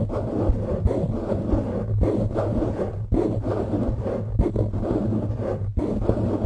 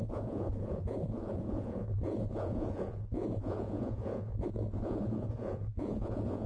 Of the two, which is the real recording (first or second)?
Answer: first